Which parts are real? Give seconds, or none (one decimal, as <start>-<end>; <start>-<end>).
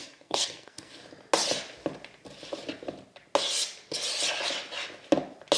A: 1.0-5.6